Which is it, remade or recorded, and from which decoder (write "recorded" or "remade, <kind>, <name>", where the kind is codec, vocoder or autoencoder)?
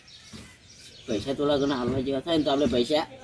recorded